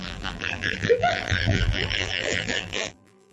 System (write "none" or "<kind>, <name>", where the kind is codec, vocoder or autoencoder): vocoder, BigVGAN v2